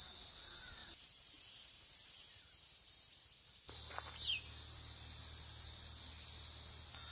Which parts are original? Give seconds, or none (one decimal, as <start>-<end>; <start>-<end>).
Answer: 0.0-0.8; 3.3-7.1